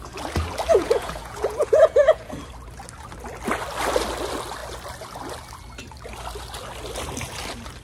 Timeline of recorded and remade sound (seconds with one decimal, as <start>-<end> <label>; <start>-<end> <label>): 0.0-0.7 recorded; 0.7-2.3 remade; 2.3-7.8 recorded